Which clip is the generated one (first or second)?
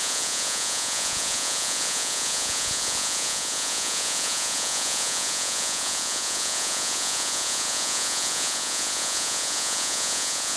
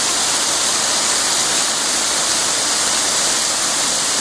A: first